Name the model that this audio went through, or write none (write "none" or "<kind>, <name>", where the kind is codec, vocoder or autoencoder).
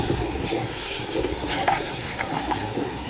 codec, SNAC